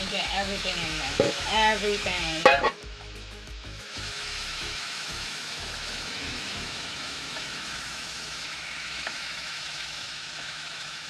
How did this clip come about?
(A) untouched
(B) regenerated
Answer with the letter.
B